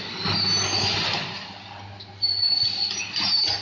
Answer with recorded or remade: recorded